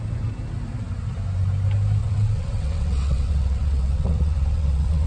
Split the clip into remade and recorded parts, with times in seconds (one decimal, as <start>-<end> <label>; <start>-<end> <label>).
0.0-2.0 recorded; 2.0-5.1 remade